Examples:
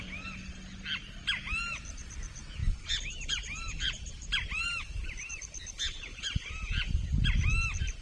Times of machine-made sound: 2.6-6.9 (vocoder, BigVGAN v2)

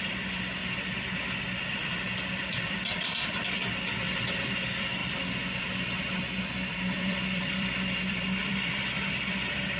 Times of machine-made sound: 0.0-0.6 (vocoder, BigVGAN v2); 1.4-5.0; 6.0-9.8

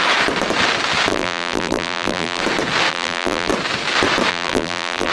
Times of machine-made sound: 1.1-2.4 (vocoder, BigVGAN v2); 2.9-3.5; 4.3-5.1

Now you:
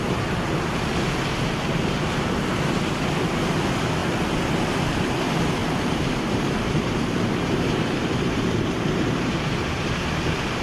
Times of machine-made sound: 5.6-10.2 (vocoder, BigVGAN v2)